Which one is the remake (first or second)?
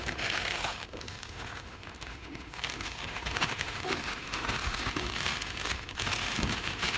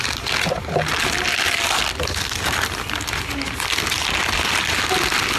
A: first